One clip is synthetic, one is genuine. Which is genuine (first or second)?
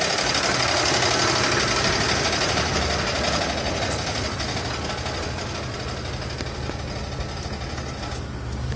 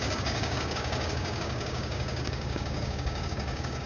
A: first